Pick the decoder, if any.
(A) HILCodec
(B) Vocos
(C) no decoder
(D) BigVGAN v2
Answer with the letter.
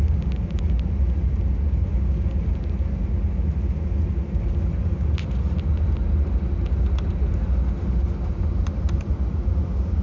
C